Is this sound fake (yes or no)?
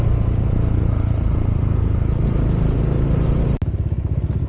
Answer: no